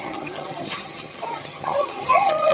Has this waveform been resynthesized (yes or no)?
yes